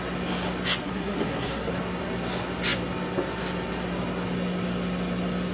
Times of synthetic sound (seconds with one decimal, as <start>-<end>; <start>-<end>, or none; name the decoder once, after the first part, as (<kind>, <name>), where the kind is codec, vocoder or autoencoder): 0.8-1.7 (codec, SNAC)